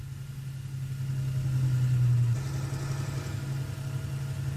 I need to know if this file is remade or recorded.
recorded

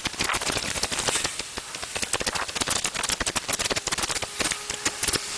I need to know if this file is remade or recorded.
recorded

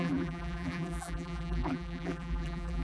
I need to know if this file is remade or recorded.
remade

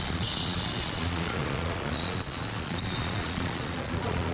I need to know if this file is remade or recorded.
remade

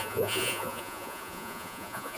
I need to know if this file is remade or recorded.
remade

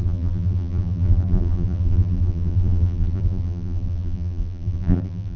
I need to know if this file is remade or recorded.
remade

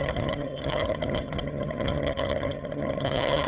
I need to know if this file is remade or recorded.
remade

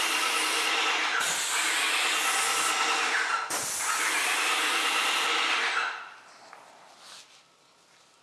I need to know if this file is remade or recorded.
recorded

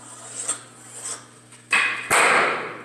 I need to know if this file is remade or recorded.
recorded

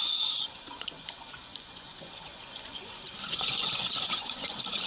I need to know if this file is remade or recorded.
remade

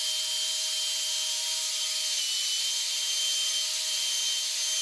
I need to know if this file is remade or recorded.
recorded